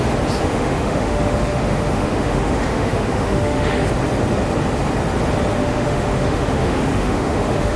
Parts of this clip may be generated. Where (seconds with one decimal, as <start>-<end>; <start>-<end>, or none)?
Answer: 0.4-3.9; 5.6-7.8